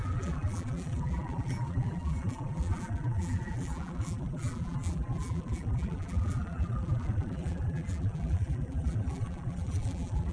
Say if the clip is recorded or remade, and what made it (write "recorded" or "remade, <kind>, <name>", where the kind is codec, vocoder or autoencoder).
remade, vocoder, BigVGAN v2